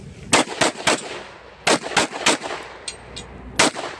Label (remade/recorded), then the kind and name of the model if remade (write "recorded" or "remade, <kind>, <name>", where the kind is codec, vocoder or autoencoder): recorded